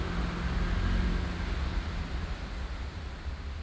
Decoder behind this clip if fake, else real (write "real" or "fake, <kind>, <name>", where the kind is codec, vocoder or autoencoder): real